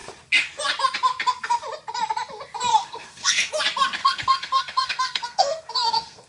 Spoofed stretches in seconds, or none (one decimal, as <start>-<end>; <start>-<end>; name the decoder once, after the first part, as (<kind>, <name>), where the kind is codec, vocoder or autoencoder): 2.7-3.5 (codec, SNAC); 4.0-6.3